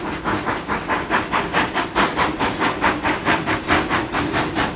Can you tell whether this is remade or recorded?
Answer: remade